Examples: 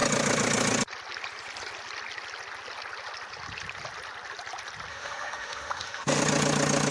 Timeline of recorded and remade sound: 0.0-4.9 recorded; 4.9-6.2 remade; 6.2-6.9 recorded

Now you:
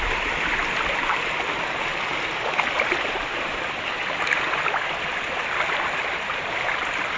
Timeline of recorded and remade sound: 0.0-7.2 recorded

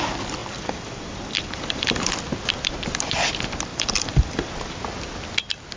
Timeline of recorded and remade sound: 0.0-0.4 recorded; 0.4-2.0 remade; 2.0-3.7 recorded; 3.7-4.5 remade; 4.5-5.8 recorded

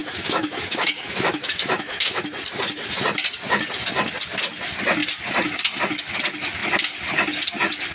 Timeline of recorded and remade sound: 0.0-2.2 remade; 2.2-7.9 recorded

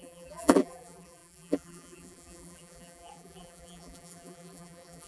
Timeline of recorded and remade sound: 0.0-5.1 remade

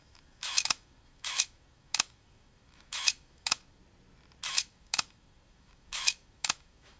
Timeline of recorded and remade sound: 0.0-3.8 remade; 3.8-4.5 recorded; 4.5-7.0 remade

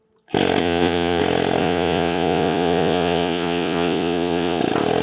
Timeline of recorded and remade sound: 0.0-0.6 recorded; 0.6-1.2 remade; 1.2-1.6 recorded; 1.6-4.6 remade; 4.6-5.0 recorded

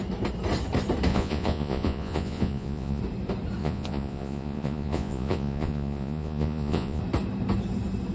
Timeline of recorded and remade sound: 0.0-1.1 recorded; 1.1-3.0 remade; 3.0-3.6 recorded; 3.6-7.0 remade; 7.0-8.1 recorded